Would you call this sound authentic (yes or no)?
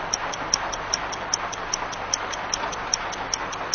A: yes